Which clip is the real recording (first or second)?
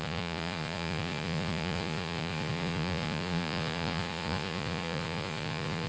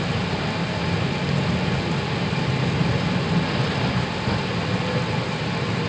second